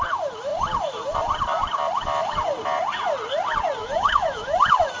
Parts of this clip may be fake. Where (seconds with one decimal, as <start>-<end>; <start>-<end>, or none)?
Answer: 3.8-4.6